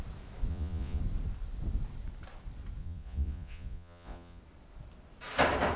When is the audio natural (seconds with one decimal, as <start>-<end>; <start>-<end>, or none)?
0.0-0.5; 1.0-2.8; 4.4-5.8